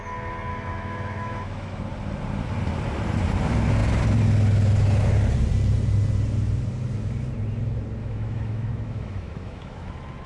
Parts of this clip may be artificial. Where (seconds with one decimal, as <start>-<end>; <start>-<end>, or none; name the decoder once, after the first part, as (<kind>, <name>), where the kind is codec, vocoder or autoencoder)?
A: 0.5-1.8 (autoencoder, DAC-VAE); 8.0-9.9